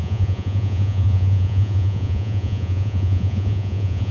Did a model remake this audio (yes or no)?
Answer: yes